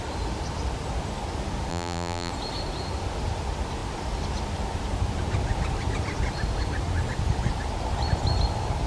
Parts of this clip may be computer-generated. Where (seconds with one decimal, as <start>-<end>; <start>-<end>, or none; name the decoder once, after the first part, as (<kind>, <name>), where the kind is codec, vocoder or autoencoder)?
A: 1.7-2.3 (vocoder, BigVGAN v2)